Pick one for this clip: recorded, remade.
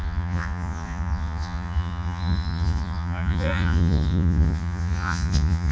remade